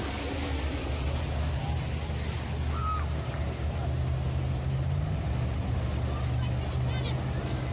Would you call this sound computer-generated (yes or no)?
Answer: no